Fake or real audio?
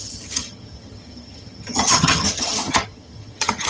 fake